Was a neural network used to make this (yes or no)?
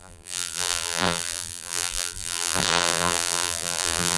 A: yes